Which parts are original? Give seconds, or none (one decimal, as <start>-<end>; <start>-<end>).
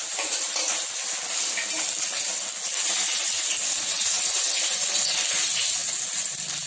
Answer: 0.0-6.7